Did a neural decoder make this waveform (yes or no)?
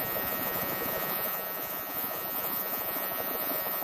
yes